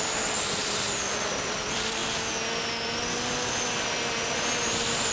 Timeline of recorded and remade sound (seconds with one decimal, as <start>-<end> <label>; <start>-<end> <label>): 0.0-2.0 remade; 2.0-5.1 recorded